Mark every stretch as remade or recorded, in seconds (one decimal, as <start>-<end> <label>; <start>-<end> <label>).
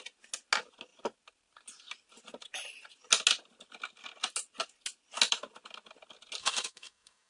0.0-6.4 recorded; 6.4-7.3 remade